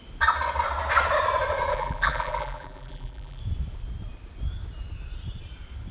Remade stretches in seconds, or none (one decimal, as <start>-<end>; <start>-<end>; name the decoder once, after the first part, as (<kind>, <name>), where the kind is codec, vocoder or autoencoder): 1.7-3.4 (vocoder, BigVGAN v2)